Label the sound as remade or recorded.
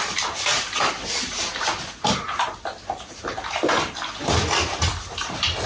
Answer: recorded